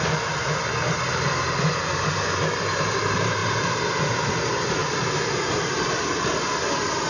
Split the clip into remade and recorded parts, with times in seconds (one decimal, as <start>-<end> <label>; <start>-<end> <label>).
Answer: 0.0-4.8 remade; 4.8-5.3 recorded; 5.3-7.1 remade

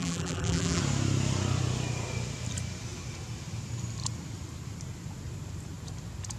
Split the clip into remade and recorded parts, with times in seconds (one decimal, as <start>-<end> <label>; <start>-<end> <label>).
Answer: 0.0-0.8 remade; 0.8-6.4 recorded

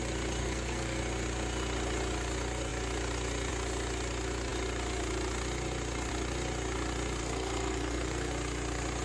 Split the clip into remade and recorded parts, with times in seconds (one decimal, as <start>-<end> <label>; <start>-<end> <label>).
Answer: 0.0-0.4 recorded; 0.4-1.0 remade; 1.0-7.2 recorded; 7.2-8.3 remade; 8.3-9.0 recorded

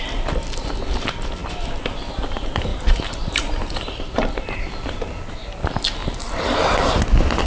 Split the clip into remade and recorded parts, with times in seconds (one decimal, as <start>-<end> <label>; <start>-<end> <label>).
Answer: 0.0-2.7 recorded; 2.7-4.6 remade; 4.6-6.0 recorded; 6.0-7.0 remade; 7.0-7.5 recorded

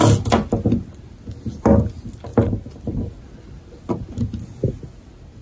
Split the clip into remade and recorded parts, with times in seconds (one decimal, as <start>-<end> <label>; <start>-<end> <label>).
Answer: 0.0-5.4 recorded

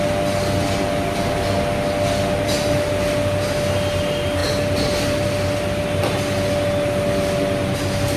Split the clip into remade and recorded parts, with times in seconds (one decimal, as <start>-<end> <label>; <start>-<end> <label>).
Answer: 0.0-8.2 recorded